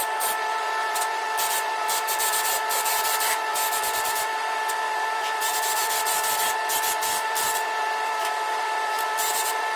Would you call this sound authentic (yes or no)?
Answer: no